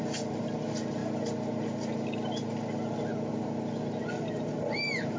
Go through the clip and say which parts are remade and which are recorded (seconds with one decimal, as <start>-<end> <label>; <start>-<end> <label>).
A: 0.0-5.2 recorded